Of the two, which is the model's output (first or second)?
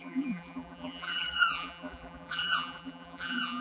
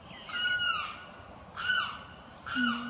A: first